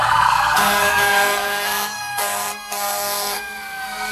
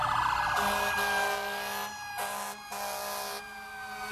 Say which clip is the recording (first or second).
second